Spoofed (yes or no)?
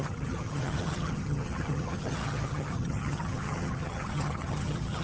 yes